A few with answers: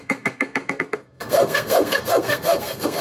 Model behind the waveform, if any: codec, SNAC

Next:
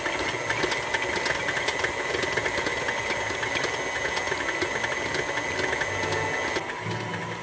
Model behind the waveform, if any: none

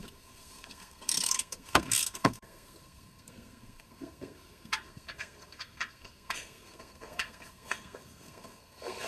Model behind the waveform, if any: codec, SNAC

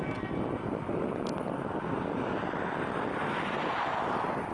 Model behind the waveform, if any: none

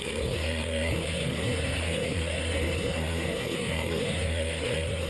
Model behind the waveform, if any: codec, SNAC